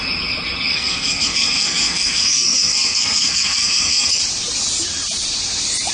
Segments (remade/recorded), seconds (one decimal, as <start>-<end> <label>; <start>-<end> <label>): 0.0-0.7 recorded; 0.7-4.2 remade; 4.2-5.9 recorded